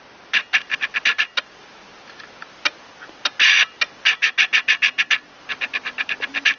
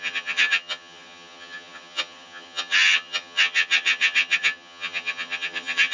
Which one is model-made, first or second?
second